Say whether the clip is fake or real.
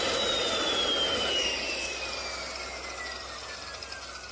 real